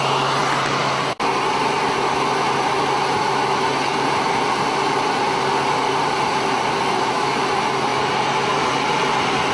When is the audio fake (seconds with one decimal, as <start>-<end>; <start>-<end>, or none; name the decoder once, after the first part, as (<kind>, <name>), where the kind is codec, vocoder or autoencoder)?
3.9-7.1 (vocoder, BigVGAN v2); 7.9-9.1